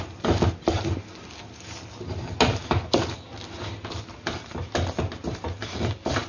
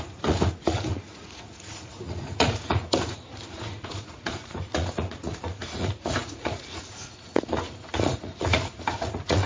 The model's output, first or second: second